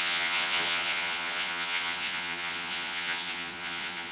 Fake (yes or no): yes